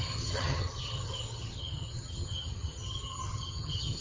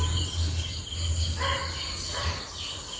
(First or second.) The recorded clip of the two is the second